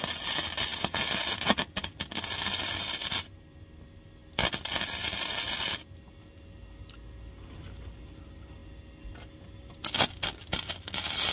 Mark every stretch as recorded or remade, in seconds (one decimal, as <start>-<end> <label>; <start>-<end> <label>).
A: 0.0-11.3 recorded